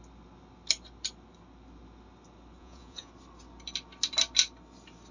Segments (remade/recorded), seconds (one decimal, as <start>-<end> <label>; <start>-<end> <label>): 0.0-2.6 recorded; 2.6-3.1 remade; 3.1-5.1 recorded